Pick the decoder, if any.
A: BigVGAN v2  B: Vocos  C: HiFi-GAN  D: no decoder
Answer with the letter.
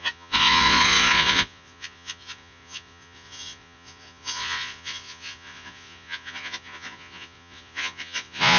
B